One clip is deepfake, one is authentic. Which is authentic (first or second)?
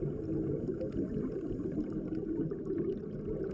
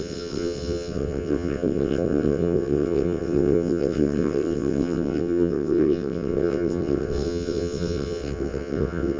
first